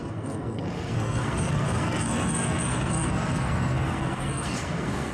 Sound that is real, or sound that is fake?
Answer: fake